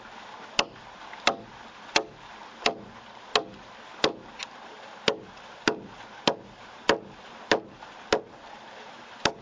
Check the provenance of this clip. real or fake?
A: real